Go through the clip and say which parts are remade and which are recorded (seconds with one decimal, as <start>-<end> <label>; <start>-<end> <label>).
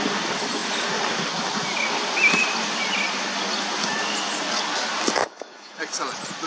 0.0-5.2 recorded; 5.2-5.8 remade; 5.8-6.5 recorded